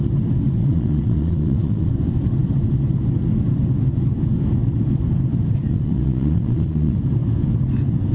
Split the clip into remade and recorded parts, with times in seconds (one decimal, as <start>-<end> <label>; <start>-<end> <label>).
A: 0.0-0.6 recorded; 0.6-1.9 remade; 1.9-5.7 recorded; 5.7-7.0 remade; 7.0-8.1 recorded